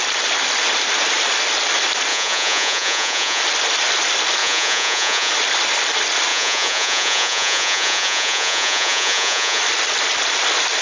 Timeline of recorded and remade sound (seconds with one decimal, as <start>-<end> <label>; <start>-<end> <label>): 0.0-2.1 recorded; 2.1-3.4 remade; 3.4-4.4 recorded; 4.4-5.3 remade; 5.3-6.3 recorded; 6.3-9.6 remade; 9.6-10.8 recorded